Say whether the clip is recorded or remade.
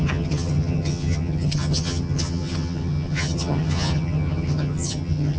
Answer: remade